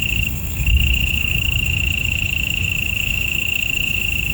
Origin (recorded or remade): remade